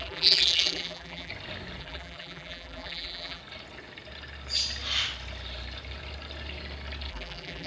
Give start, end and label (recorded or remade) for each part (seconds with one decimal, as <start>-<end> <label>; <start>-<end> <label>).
0.0-1.3 remade; 1.3-1.8 recorded; 1.8-3.4 remade; 3.4-7.1 recorded; 7.1-7.7 remade